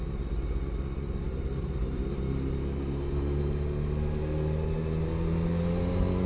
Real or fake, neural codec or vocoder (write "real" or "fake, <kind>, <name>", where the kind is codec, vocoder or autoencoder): real